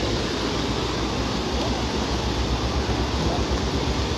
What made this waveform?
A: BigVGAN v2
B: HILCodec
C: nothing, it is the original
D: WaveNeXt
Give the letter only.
C